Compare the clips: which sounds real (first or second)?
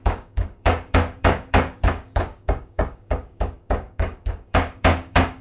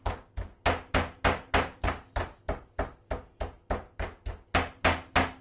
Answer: second